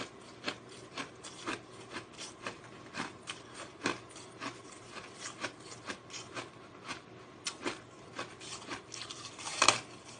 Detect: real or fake real